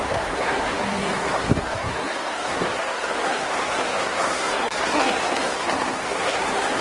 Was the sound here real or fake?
fake